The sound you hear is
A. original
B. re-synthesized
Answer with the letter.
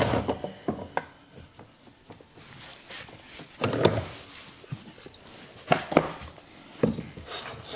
A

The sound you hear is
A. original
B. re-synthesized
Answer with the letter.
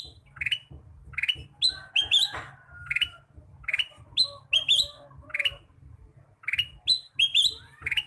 A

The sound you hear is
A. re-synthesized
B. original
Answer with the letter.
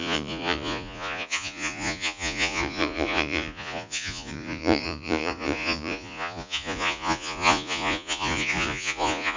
A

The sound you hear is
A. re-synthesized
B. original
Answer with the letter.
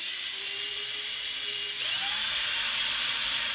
A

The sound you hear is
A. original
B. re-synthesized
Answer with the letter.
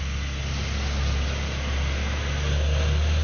A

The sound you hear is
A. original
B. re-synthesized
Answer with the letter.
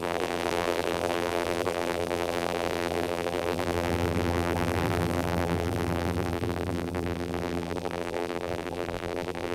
B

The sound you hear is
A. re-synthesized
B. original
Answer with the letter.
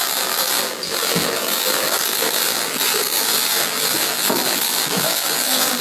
A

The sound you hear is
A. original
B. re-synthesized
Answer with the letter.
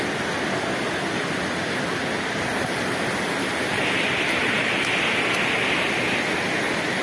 A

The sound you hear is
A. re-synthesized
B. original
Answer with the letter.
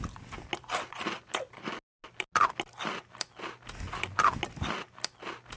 B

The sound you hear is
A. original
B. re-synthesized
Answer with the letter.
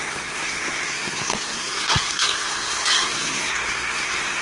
B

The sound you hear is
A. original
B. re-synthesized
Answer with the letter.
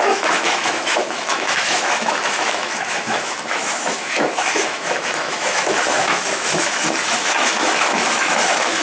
B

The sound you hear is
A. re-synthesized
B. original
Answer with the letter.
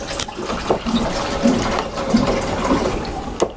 B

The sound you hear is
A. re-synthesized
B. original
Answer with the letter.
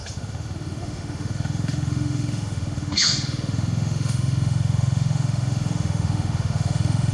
A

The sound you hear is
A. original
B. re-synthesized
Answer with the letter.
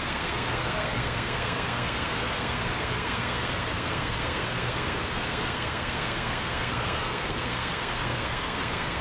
B